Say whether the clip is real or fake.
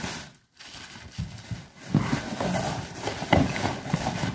real